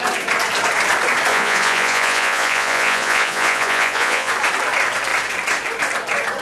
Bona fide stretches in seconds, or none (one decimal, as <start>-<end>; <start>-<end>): 0.0-1.3; 4.3-6.4

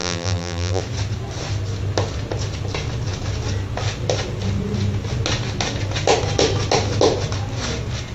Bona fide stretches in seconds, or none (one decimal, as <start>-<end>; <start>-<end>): 0.8-8.1

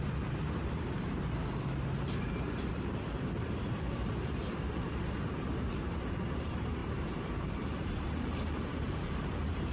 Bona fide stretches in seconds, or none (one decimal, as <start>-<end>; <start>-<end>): none